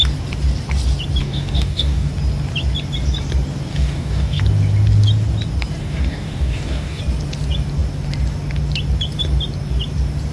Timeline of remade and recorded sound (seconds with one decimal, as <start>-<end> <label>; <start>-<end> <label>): 0.0-1.2 recorded; 1.2-2.1 remade; 2.1-3.7 recorded; 3.7-4.4 remade; 4.4-5.8 recorded; 5.8-7.0 remade; 7.0-10.3 recorded